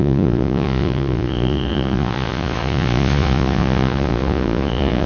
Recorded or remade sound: remade